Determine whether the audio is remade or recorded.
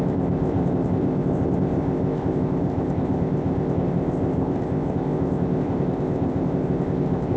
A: remade